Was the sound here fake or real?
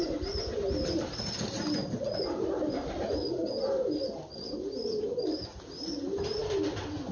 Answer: real